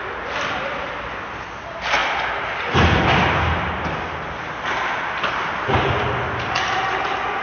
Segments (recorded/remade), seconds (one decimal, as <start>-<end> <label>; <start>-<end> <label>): 0.0-7.4 recorded